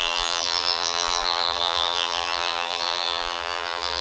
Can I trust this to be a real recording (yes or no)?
no